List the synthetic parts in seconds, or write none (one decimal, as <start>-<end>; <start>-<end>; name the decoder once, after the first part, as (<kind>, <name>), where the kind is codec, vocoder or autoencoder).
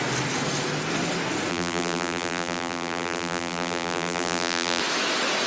1.5-4.8 (vocoder, BigVGAN v2)